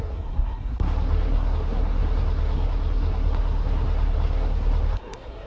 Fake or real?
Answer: fake